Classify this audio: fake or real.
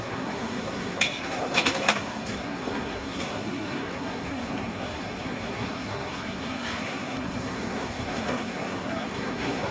fake